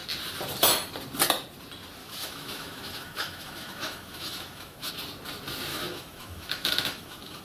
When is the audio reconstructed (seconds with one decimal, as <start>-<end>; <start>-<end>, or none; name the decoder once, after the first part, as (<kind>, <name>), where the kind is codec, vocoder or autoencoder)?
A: 2.0-4.9 (autoencoder, DAC-VAE); 5.7-7.4